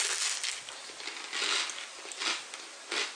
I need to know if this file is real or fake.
real